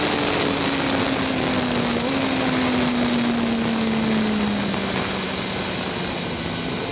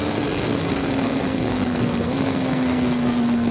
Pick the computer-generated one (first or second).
second